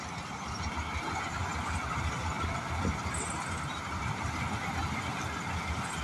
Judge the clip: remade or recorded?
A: recorded